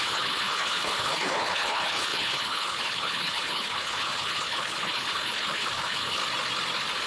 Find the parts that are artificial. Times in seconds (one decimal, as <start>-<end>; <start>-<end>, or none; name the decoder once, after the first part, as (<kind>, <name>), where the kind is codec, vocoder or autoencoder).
0.0-6.2 (codec, HILCodec)